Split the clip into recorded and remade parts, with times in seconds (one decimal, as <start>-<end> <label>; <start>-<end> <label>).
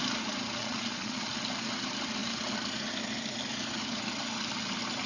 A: 0.0-0.6 recorded; 0.6-1.3 remade; 1.3-5.1 recorded